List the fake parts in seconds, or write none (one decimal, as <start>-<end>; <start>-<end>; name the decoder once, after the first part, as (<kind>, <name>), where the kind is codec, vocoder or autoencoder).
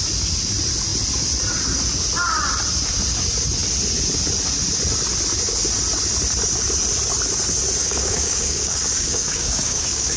7.8-10.2 (codec, DAC)